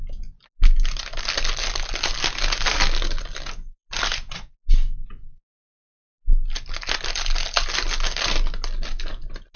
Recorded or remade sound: recorded